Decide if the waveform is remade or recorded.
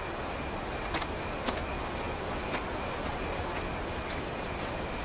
recorded